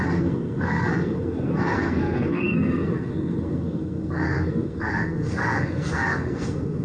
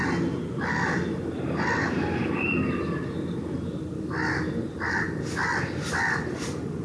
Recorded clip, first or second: second